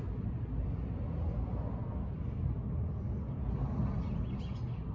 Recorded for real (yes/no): yes